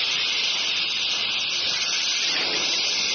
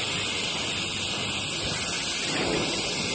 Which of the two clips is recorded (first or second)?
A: second